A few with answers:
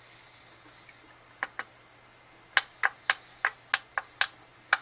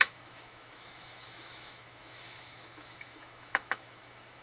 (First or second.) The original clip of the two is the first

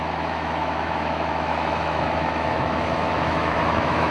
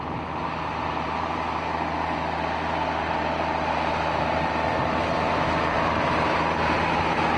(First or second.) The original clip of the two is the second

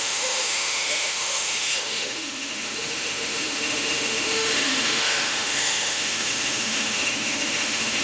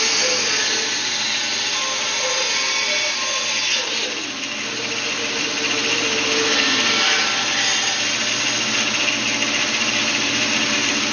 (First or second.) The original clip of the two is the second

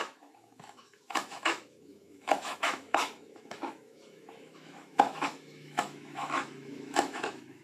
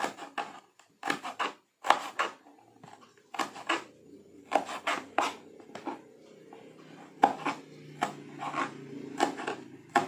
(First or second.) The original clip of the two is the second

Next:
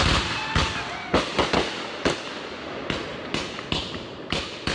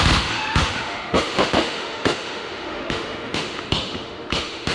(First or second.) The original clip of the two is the first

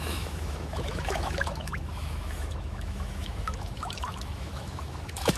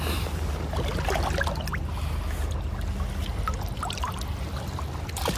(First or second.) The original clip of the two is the second